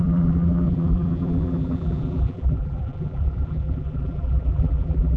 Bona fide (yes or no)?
no